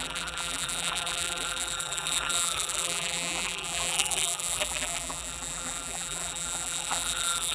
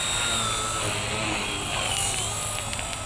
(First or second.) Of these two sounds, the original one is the second